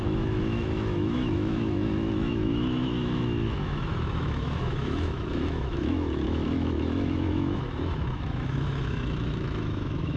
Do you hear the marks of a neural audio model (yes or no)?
yes